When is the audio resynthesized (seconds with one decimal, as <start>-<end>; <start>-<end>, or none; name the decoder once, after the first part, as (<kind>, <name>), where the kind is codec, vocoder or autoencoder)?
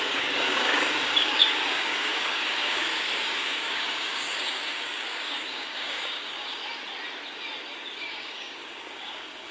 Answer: 0.0-6.6 (codec, DAC); 8.0-9.5